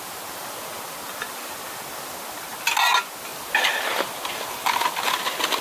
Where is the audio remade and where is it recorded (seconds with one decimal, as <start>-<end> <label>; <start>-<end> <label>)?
0.0-5.6 recorded